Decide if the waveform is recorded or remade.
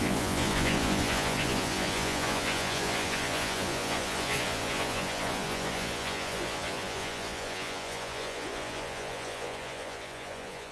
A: remade